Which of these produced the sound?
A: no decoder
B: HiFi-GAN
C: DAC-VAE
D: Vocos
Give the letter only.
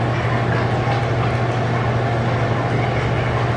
A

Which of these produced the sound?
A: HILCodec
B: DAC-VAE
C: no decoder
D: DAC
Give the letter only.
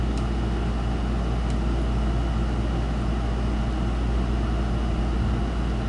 C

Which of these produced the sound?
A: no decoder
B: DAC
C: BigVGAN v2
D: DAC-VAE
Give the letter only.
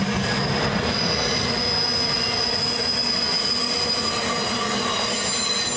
A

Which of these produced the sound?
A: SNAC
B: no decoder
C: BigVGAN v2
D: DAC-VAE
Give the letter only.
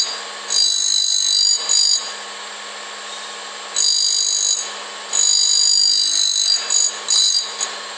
B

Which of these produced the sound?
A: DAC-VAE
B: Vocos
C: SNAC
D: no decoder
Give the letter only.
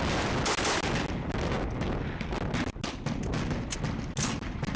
D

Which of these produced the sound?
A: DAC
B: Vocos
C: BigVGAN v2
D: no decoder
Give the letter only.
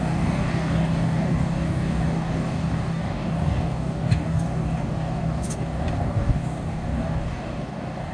A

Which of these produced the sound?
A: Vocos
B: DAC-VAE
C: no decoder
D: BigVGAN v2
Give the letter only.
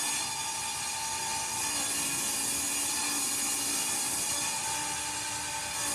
C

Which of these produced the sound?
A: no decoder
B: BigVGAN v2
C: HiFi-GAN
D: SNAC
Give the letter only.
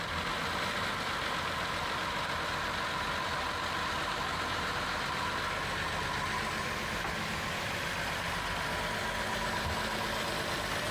A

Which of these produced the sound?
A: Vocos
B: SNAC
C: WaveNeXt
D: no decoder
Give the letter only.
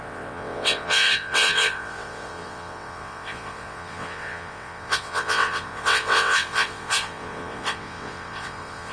C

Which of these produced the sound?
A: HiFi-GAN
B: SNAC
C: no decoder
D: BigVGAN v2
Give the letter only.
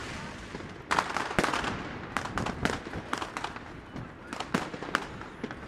C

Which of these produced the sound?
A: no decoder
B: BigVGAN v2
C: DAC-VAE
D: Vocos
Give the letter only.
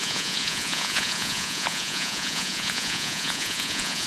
D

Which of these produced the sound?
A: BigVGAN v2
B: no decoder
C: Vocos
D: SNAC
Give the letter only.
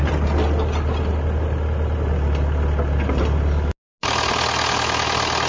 B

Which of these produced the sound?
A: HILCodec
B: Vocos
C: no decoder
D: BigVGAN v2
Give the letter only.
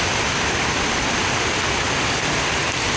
C